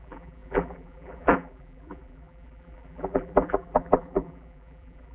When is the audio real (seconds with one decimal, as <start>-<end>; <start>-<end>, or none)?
none